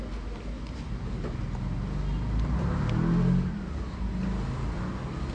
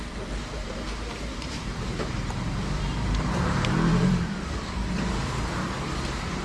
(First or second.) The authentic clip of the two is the first